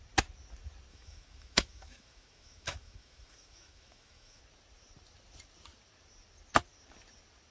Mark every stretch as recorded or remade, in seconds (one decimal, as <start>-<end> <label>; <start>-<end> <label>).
0.0-0.9 recorded; 0.9-4.4 remade; 4.4-7.5 recorded

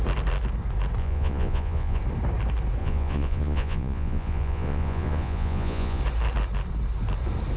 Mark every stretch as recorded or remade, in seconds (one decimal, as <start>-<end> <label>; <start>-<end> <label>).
0.0-1.0 recorded; 1.0-2.0 remade; 2.0-2.8 recorded; 2.8-6.0 remade; 6.0-7.6 recorded

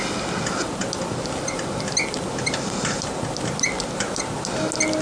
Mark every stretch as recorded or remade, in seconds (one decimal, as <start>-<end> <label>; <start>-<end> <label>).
0.0-5.0 recorded

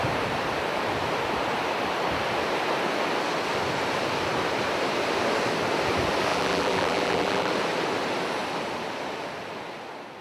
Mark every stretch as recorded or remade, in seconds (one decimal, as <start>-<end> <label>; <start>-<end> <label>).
0.0-6.3 recorded; 6.3-7.5 remade; 7.5-10.2 recorded